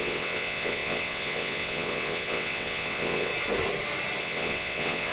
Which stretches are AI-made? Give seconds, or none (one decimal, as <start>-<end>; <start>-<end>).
0.0-3.3; 4.2-5.1